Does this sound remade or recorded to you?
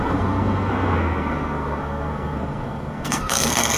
remade